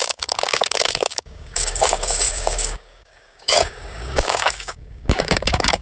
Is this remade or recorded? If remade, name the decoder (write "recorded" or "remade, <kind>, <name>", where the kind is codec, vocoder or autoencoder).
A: remade, codec, DAC